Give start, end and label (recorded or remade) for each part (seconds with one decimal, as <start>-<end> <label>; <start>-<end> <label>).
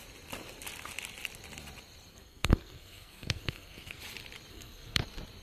0.0-2.1 recorded; 2.1-4.0 remade; 4.0-4.5 recorded; 4.5-5.0 remade; 5.0-5.4 recorded